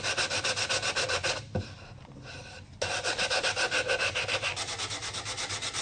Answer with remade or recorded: recorded